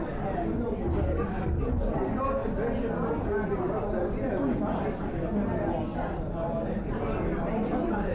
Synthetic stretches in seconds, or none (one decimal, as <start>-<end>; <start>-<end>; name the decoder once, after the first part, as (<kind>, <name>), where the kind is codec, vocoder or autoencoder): none